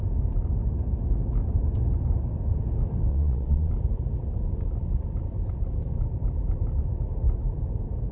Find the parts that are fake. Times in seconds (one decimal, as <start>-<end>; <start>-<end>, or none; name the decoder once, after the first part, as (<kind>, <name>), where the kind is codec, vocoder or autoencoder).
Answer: 3.1-3.7 (vocoder, Vocos)